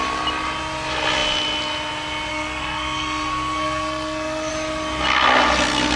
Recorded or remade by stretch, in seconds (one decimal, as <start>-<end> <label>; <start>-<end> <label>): 0.0-2.3 recorded; 2.3-4.5 remade; 4.5-6.0 recorded